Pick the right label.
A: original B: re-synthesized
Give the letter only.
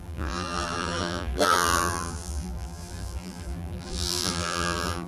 B